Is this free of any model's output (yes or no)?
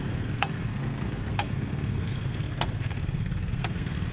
no